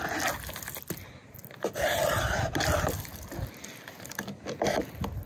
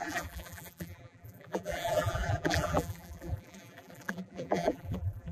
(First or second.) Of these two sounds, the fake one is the second